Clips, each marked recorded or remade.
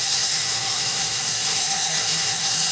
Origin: remade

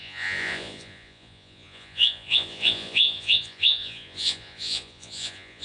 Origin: remade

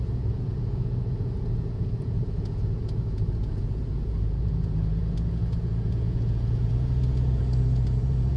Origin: remade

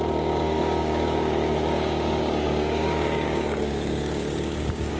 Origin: remade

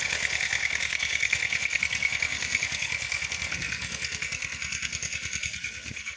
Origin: remade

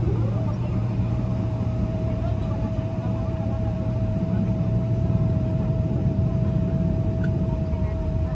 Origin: remade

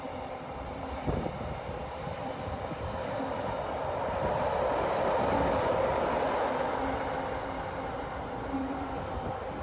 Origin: recorded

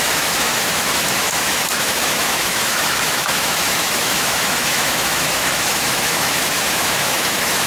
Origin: remade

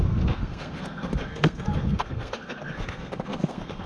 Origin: remade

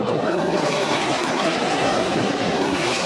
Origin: remade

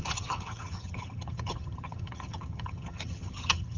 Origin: remade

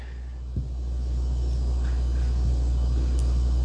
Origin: recorded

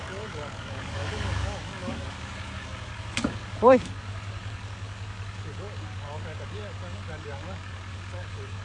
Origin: remade